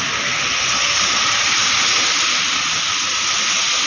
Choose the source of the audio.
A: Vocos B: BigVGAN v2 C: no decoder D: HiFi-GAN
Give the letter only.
C